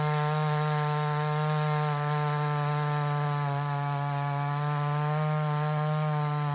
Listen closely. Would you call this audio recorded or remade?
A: recorded